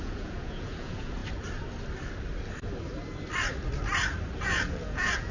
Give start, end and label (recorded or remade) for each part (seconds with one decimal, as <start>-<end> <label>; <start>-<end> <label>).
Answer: 0.0-1.2 remade; 1.2-4.4 recorded; 4.4-5.3 remade